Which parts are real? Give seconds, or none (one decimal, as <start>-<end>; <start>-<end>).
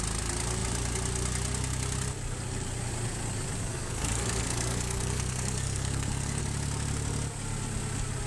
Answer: 0.0-3.7; 6.4-8.3